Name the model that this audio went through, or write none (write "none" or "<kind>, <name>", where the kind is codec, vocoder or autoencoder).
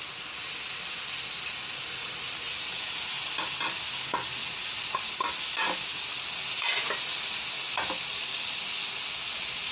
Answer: none